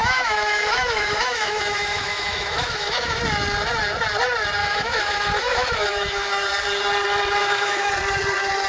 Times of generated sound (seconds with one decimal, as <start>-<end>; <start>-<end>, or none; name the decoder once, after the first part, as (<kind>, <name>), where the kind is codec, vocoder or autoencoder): 0.0-3.2 (autoencoder, DAC-VAE); 4.6-6.5; 7.4-7.9